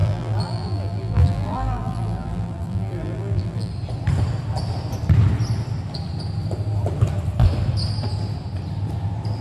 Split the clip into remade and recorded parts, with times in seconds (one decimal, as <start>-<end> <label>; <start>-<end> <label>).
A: 0.0-3.7 remade; 3.7-9.4 recorded